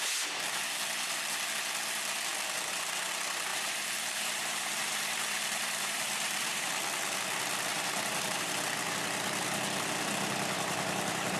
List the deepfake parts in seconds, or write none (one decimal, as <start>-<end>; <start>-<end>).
3.5-6.7; 7.7-8.5